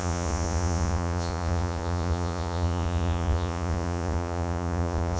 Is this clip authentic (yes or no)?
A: no